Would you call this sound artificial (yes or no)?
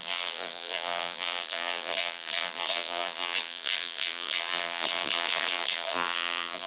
yes